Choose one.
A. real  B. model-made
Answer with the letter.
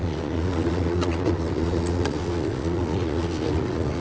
B